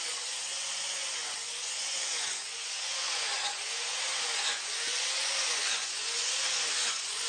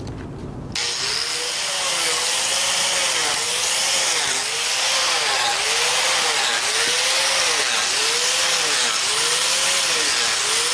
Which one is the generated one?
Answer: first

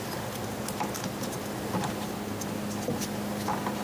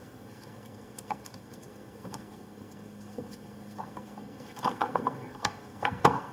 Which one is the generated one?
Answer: second